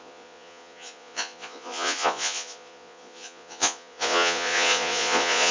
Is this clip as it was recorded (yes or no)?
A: no